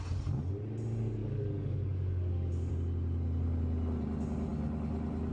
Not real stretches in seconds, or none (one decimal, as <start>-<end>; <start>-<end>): 1.2-2.7